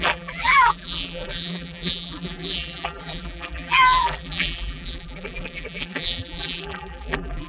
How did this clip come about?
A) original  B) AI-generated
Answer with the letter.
B